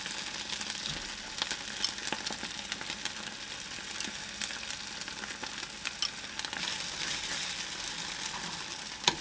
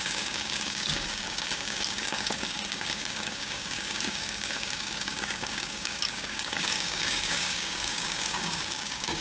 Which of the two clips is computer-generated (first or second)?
second